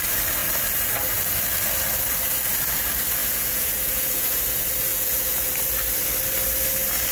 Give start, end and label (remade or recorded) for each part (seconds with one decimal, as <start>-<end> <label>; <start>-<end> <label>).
0.0-3.2 recorded; 3.2-4.4 remade; 4.4-4.9 recorded; 4.9-5.5 remade; 5.5-7.1 recorded